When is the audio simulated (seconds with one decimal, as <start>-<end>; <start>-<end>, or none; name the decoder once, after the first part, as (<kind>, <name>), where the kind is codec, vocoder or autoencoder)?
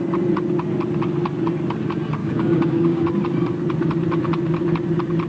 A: 2.2-3.1 (codec, DAC)